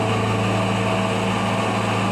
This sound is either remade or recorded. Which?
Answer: recorded